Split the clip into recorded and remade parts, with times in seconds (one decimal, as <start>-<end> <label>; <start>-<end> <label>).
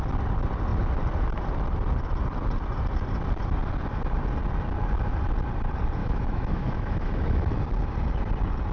0.0-6.0 recorded; 6.0-7.5 remade; 7.5-8.7 recorded